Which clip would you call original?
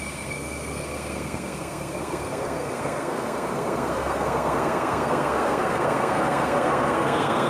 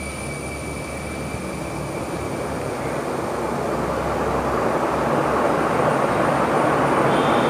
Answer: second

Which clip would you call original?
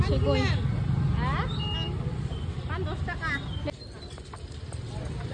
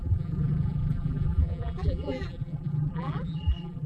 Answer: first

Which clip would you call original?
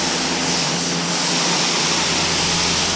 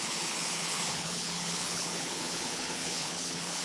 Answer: first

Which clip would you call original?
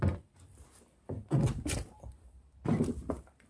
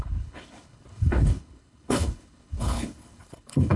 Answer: first